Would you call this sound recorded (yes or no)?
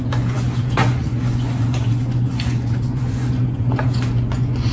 no